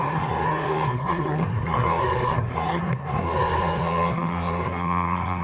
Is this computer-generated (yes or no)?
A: yes